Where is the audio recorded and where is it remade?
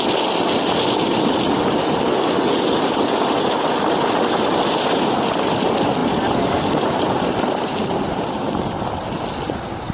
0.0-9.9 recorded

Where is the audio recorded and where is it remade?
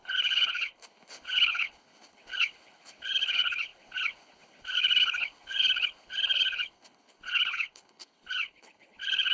0.0-9.3 remade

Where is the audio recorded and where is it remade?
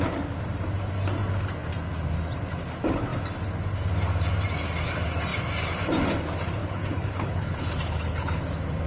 0.0-6.6 recorded; 6.6-8.4 remade; 8.4-8.9 recorded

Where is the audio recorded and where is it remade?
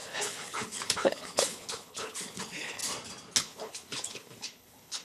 0.0-2.8 remade; 2.8-3.4 recorded; 3.4-5.0 remade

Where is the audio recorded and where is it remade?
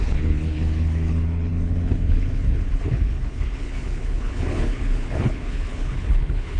0.0-6.6 remade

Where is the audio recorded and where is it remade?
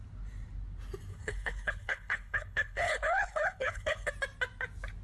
0.0-1.1 recorded; 1.1-4.1 remade; 4.1-5.0 recorded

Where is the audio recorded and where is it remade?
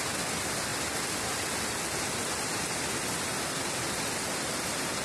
0.0-5.0 recorded